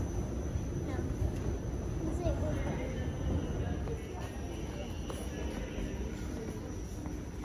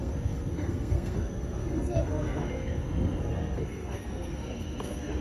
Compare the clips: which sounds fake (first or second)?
second